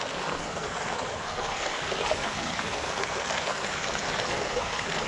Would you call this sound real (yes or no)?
no